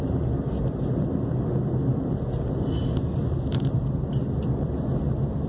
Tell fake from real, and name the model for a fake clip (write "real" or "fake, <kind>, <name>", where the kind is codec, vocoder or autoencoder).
real